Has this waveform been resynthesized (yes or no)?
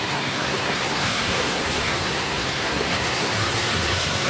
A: yes